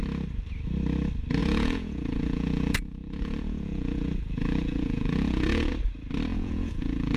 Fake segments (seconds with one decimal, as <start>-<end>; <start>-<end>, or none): 1.4-5.7; 6.3-7.2